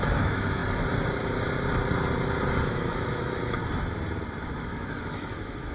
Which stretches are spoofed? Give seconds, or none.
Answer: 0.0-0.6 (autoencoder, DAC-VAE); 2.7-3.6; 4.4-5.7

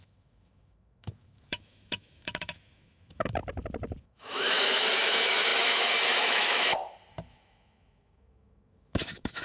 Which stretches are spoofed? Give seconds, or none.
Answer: 0.0-3.4 (autoencoder, DAC-VAE); 4.0-6.7; 7.3-9.4

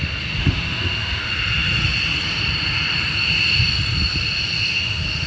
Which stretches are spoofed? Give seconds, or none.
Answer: 0.4-1.2 (autoencoder, DAC-VAE)

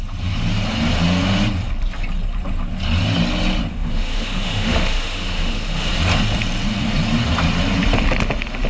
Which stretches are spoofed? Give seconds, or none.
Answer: 3.7-5.9 (autoencoder, DAC-VAE)

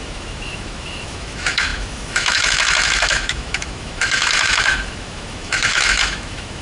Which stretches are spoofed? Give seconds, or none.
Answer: 0.0-6.6 (autoencoder, DAC-VAE)

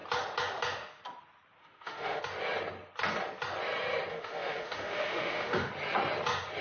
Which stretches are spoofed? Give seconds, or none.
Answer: 1.6-2.2 (autoencoder, DAC-VAE); 4.1-5.7

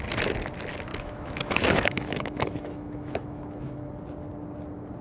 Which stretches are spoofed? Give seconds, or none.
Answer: 0.9-3.9 (autoencoder, DAC-VAE)

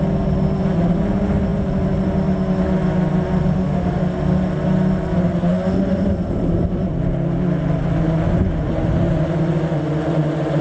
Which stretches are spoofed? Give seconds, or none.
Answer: 3.5-4.0 (autoencoder, DAC-VAE)